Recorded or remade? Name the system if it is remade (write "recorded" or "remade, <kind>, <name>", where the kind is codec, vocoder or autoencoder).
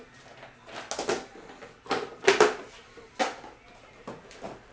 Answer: recorded